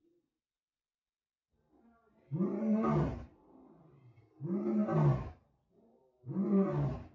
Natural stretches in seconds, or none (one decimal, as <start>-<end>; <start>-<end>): 0.0-3.1; 3.8-7.1